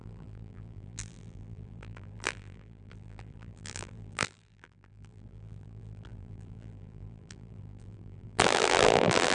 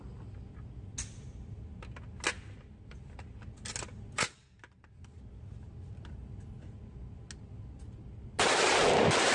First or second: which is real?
second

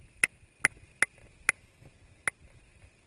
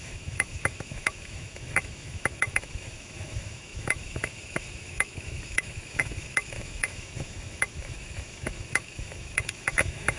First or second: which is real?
first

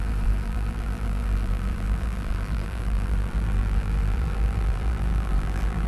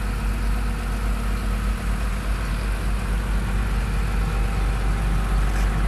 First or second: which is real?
second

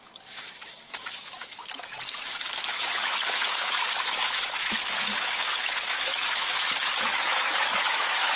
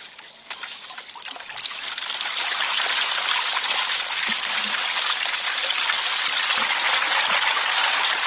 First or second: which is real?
second